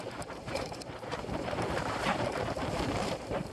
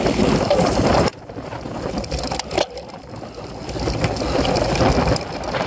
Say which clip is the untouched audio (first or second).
second